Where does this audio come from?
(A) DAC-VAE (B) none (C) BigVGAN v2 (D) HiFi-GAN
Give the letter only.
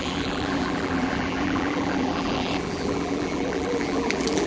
C